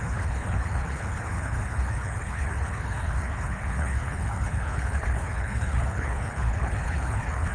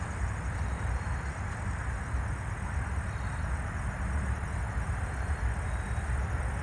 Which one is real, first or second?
second